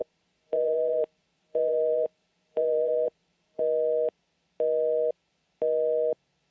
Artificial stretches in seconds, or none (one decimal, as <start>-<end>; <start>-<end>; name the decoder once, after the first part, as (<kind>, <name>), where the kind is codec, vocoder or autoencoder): 0.0-3.6 (vocoder, BigVGAN v2)